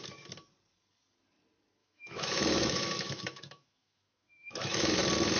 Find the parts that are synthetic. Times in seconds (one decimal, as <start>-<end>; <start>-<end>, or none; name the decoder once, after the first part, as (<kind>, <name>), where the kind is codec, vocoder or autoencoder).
1.8-5.0 (autoencoder, DAC-VAE)